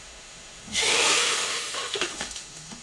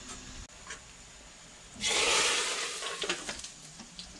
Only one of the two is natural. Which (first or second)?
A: second